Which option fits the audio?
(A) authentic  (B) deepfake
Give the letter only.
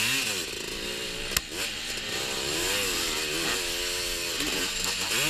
A